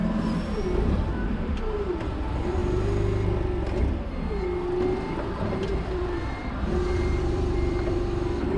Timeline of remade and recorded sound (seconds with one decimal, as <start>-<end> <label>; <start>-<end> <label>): 0.0-0.7 recorded; 0.7-2.6 remade; 2.6-5.3 recorded; 5.3-8.6 remade